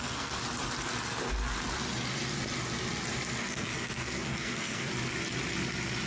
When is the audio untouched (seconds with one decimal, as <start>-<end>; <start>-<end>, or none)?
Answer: 0.4-3.4; 4.9-6.1